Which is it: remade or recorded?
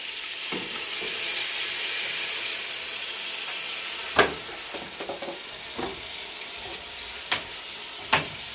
recorded